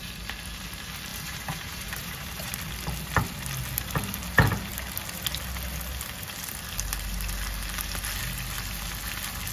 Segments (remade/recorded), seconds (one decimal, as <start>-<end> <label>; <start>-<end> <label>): 0.0-1.1 recorded; 1.1-2.7 remade; 2.7-9.5 recorded